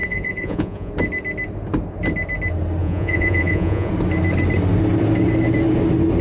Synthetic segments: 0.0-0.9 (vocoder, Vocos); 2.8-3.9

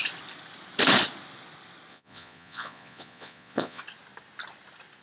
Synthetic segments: 1.9-3.8 (vocoder, Vocos)

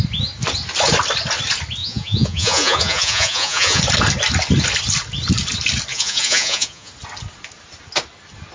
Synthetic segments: 1.8-3.8 (vocoder, Vocos); 5.9-6.9

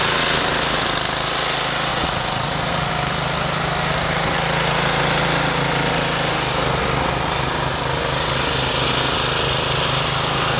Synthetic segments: 1.9-2.9 (vocoder, Vocos)

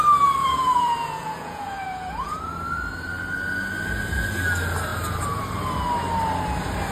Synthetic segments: 0.4-2.4 (vocoder, Vocos)